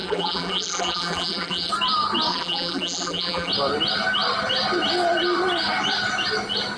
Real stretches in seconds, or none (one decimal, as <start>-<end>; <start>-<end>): 1.7-2.3; 3.5-6.8